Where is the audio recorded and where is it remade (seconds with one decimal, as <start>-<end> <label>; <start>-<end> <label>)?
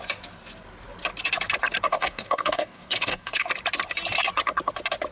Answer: 0.0-1.9 recorded; 1.9-3.5 remade; 3.5-5.1 recorded